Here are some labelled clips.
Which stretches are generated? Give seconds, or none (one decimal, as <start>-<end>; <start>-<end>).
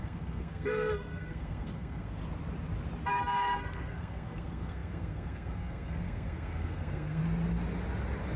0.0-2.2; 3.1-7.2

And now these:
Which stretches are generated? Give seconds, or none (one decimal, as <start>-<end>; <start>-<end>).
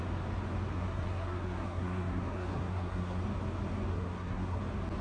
0.7-3.2; 3.9-4.6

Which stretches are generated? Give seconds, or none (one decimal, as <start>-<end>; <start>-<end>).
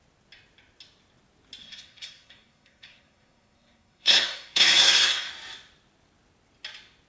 1.6-5.3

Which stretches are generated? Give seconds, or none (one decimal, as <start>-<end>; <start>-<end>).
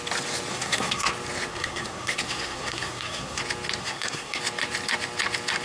0.5-1.1; 1.5-3.4; 3.8-4.4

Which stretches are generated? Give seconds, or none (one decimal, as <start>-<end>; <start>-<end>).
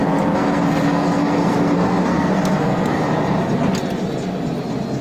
0.0-3.0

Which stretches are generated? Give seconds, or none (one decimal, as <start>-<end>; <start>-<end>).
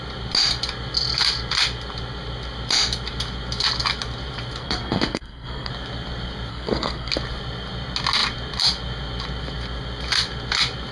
4.6-5.7; 6.5-7.1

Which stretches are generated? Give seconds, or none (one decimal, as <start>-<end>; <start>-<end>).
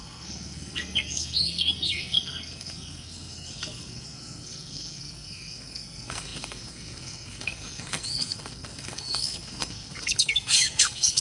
0.0-11.2